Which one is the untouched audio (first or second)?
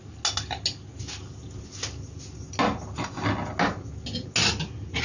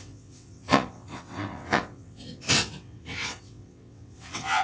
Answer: first